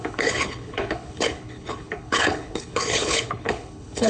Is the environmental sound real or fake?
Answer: fake